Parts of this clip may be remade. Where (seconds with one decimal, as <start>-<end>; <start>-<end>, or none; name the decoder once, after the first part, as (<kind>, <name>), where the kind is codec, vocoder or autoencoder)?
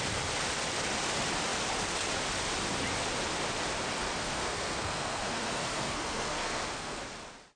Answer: 4.2-7.0 (codec, SNAC)